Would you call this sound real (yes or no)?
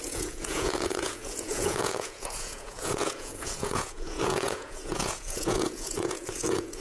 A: no